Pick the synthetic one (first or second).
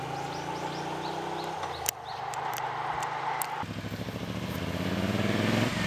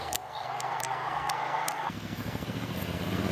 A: second